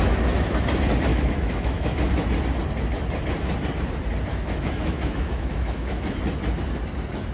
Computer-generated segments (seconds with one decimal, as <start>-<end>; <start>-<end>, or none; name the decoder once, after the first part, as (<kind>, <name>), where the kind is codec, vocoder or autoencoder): 1.1-2.1 (autoencoder, DAC-VAE); 4.3-6.2